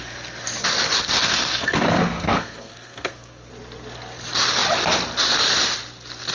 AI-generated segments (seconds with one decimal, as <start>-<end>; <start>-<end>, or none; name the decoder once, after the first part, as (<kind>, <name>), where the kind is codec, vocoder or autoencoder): 1.2-3.5 (codec, SNAC)